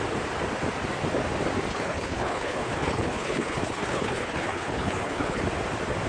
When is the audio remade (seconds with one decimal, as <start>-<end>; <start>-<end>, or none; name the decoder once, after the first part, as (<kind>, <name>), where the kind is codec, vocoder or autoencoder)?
1.7-5.4 (codec, HILCodec)